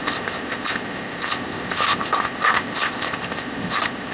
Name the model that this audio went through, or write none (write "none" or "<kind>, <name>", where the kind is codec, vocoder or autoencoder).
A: codec, ZipCodec